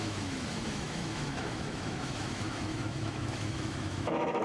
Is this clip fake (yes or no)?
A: yes